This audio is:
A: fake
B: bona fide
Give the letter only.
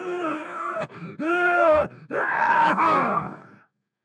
A